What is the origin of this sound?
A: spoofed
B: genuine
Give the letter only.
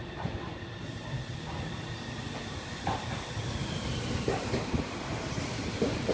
A